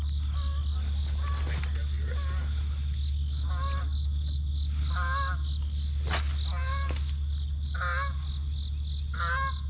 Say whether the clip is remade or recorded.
recorded